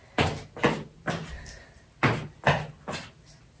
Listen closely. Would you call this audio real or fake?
real